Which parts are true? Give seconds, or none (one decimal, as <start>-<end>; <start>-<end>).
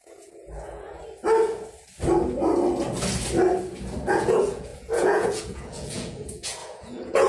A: 1.0-4.1